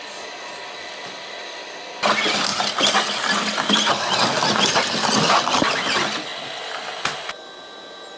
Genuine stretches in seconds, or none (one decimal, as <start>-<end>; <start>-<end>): 0.0-8.2